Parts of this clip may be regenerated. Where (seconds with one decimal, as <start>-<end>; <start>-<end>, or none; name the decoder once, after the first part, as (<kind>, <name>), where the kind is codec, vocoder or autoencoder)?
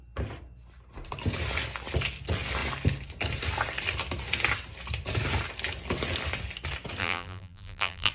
7.0-8.1 (vocoder, BigVGAN v2)